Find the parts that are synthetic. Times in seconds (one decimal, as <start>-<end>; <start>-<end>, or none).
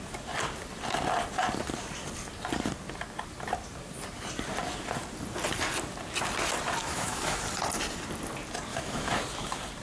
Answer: 6.8-7.4; 8.7-9.2